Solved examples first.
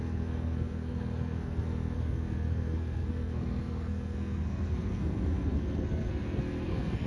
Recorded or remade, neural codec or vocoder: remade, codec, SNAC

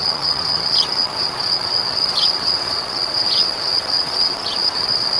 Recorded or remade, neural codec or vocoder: remade, vocoder, WaveNeXt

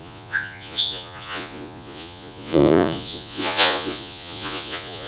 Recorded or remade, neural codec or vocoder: remade, vocoder, Vocos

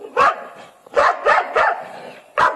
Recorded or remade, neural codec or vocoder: remade, vocoder, Vocos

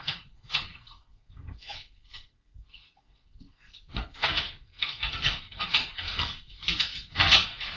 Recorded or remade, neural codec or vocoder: remade, codec, SNAC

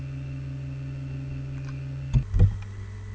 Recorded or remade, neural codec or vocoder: recorded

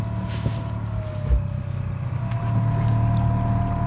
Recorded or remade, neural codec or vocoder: recorded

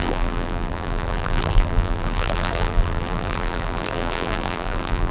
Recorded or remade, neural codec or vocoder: remade, vocoder, BigVGAN v2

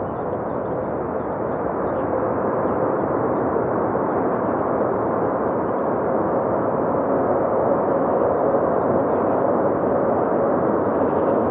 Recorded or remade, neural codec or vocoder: recorded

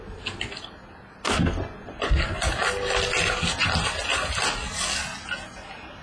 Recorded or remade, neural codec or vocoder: recorded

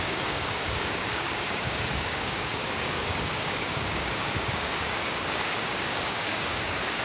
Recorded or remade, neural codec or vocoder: remade, codec, DAC